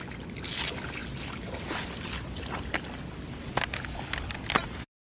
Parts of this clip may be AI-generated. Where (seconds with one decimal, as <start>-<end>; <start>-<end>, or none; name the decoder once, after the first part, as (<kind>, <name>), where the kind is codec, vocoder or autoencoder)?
none